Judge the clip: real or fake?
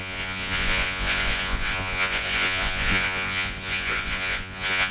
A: fake